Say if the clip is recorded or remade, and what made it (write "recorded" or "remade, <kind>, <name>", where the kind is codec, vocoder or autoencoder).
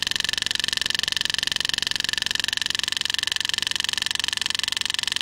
recorded